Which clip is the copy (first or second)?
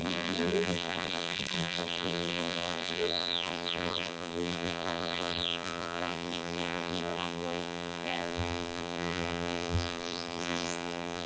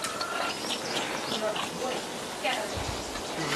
first